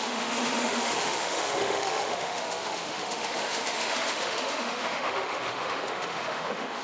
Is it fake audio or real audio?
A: fake